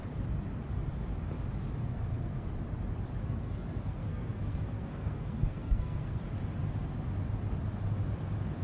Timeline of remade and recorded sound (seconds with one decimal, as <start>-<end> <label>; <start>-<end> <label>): 0.0-1.8 recorded; 1.8-2.5 remade; 2.5-3.2 recorded; 3.2-6.2 remade; 6.2-8.6 recorded